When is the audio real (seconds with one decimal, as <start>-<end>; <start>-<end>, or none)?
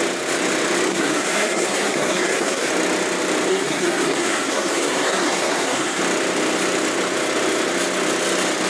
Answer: 0.0-0.9; 2.7-3.5; 6.0-8.7